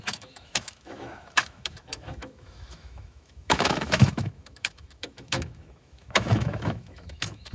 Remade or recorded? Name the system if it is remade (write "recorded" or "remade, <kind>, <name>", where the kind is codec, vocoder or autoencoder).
remade, autoencoder, DAC-VAE